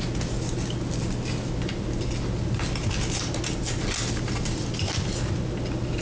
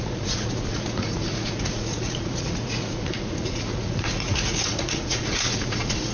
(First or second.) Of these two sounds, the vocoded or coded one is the second